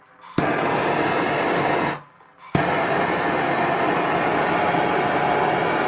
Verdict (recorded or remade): recorded